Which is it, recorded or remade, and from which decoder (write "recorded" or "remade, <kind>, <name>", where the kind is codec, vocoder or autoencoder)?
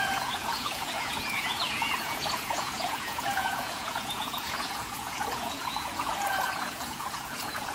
remade, vocoder, Vocos